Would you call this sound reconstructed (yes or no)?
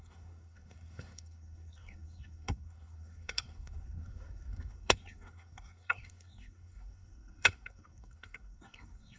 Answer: yes